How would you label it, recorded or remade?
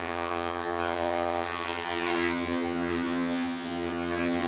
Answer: remade